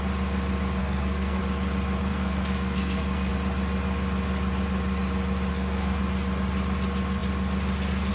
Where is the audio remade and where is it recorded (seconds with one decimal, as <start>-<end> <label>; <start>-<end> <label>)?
0.0-0.8 recorded; 0.8-1.4 remade; 1.4-2.1 recorded; 2.1-3.3 remade; 3.3-5.5 recorded; 5.5-6.0 remade; 6.0-8.1 recorded